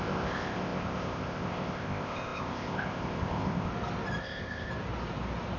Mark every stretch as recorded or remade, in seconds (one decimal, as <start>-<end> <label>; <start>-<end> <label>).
0.0-3.7 remade; 3.7-4.2 recorded; 4.2-4.7 remade; 4.7-5.6 recorded